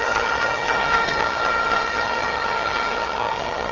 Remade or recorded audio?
remade